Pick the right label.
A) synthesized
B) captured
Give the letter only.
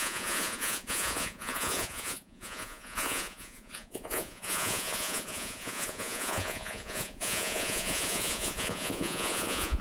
A